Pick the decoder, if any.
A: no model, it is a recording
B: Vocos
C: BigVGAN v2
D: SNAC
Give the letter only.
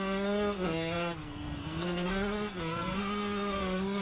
D